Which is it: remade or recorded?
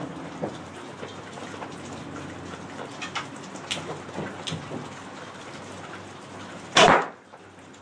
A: recorded